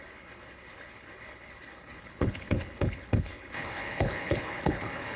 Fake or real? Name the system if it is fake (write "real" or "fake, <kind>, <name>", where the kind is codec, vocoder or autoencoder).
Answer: fake, codec, HILCodec